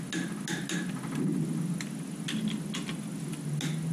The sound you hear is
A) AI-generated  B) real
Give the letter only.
B